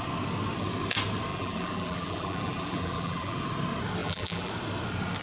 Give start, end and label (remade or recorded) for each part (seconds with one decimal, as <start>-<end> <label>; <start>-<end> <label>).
0.0-1.3 recorded; 1.3-3.4 remade; 3.4-4.0 recorded; 4.0-4.5 remade; 4.5-5.2 recorded